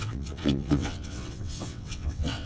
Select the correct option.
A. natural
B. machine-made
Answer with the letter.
B